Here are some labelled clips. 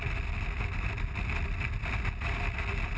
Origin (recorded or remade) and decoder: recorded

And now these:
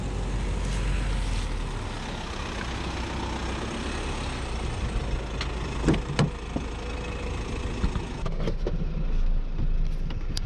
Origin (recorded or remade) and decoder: recorded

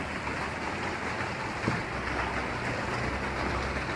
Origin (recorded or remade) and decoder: recorded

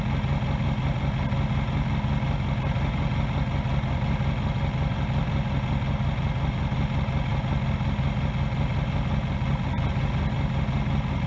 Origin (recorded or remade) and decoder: recorded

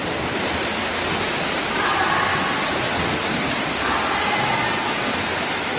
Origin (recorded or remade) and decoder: recorded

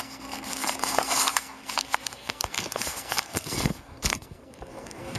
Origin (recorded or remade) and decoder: remade, codec, SNAC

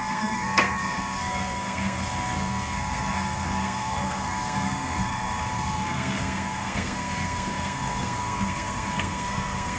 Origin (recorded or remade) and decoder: remade, codec, SNAC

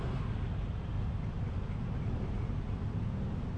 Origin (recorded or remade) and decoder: recorded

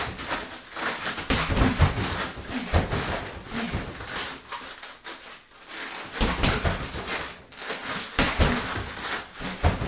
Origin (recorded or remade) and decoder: recorded